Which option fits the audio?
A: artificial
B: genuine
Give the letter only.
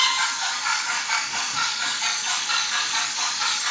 A